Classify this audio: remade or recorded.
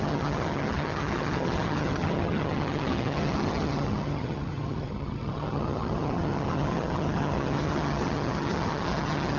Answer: remade